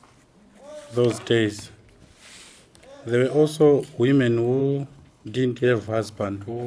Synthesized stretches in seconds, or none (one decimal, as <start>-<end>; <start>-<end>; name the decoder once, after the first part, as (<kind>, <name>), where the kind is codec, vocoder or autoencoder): 4.6-6.7 (codec, HILCodec)